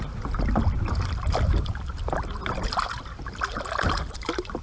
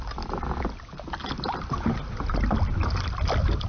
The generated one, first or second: first